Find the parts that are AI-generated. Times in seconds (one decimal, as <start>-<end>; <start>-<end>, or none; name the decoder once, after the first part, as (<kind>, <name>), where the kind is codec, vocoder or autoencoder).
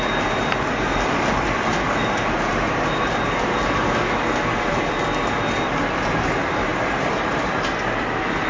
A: none